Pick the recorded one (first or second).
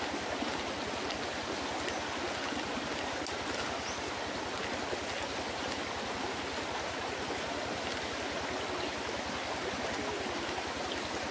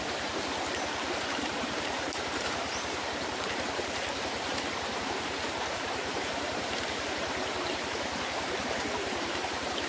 first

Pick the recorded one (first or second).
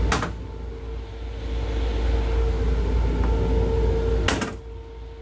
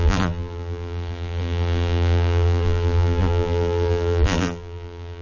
first